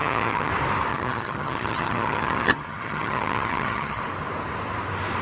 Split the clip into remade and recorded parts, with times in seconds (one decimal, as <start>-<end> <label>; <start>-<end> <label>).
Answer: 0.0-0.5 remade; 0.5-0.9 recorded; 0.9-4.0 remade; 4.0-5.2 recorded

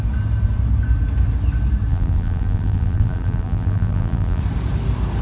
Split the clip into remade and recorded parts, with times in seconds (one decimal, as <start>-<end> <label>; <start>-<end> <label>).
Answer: 0.0-1.9 recorded; 1.9-4.4 remade; 4.4-5.2 recorded

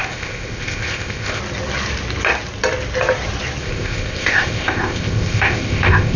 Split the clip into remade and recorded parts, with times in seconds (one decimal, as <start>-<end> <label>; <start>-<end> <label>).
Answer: 0.0-1.4 remade; 1.4-3.6 recorded; 3.6-6.2 remade

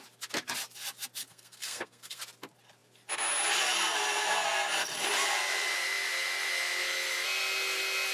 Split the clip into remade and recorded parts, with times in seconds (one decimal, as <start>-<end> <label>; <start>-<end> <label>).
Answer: 0.0-1.2 recorded; 1.2-2.2 remade; 2.2-8.1 recorded

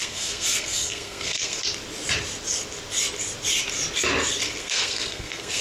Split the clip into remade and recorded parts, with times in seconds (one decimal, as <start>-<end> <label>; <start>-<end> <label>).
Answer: 0.0-1.6 remade; 1.6-4.6 recorded; 4.6-5.6 remade